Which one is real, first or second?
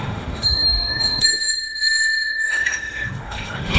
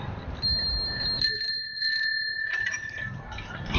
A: second